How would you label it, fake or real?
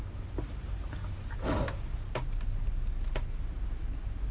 real